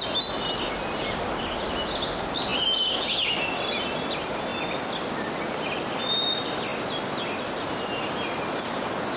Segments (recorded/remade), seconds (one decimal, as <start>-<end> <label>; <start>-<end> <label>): 0.0-9.2 recorded